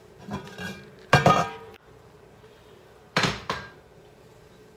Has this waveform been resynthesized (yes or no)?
yes